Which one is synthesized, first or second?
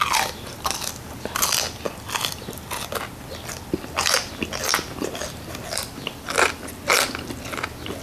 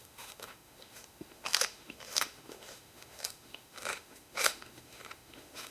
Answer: second